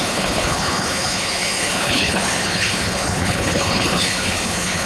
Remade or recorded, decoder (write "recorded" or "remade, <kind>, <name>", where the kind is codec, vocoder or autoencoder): remade, codec, HILCodec